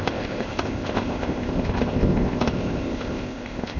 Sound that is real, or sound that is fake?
fake